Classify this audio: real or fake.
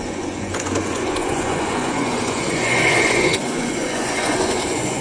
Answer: fake